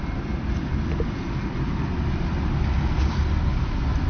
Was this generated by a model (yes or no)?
no